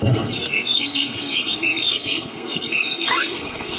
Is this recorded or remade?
remade